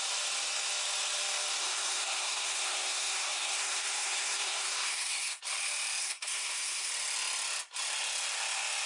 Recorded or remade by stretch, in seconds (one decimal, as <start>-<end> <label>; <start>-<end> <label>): 0.0-1.6 recorded; 1.6-5.4 remade; 5.4-6.0 recorded; 6.0-6.9 remade; 6.9-8.9 recorded